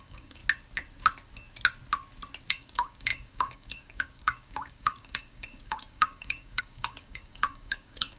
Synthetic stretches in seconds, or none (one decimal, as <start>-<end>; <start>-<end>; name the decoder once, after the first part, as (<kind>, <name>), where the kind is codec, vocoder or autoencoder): 0.0-0.4 (codec, DAC); 2.5-8.2